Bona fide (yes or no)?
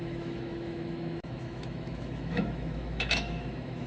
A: no